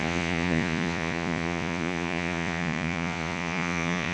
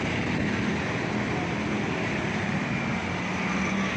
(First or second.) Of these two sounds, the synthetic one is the first